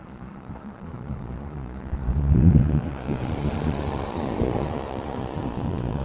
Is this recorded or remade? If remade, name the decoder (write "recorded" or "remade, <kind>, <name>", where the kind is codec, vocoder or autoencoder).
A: remade, vocoder, Vocos